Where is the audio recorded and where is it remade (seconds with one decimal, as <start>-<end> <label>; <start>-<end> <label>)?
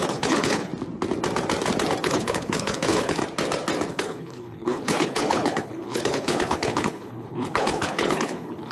0.0-0.7 remade; 0.7-2.0 recorded; 2.0-3.2 remade; 3.2-3.9 recorded; 3.9-8.7 remade